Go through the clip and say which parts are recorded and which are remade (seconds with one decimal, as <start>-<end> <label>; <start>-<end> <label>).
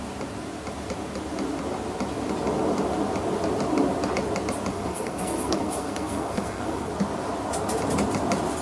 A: 0.0-4.7 recorded; 4.7-6.9 remade; 6.9-8.6 recorded